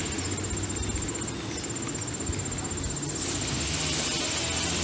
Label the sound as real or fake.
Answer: real